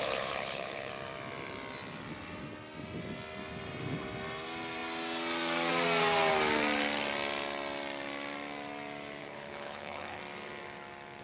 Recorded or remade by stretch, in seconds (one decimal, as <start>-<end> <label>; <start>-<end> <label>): 0.0-0.9 remade; 0.9-9.2 recorded; 9.2-10.2 remade; 10.2-11.2 recorded